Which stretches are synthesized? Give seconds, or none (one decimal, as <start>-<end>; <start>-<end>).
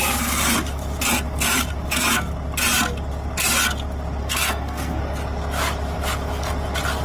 4.2-5.0